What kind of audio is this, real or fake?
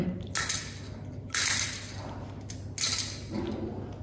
real